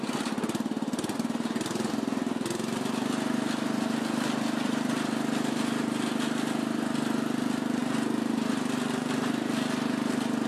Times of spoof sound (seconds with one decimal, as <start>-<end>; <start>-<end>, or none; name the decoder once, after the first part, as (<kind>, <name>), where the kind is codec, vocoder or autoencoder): none